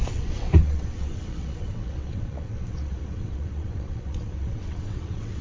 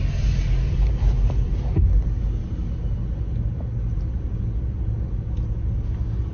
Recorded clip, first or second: second